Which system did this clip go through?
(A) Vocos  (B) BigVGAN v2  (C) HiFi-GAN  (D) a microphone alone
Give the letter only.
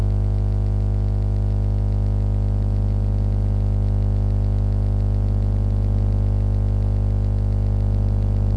D